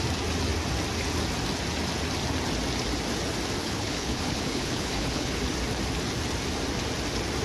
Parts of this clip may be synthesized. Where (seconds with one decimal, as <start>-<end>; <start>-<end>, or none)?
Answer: 3.6-5.4